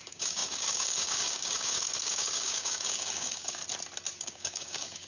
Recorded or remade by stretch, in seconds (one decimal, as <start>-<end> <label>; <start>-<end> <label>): 0.0-3.6 remade; 3.6-4.2 recorded; 4.2-5.1 remade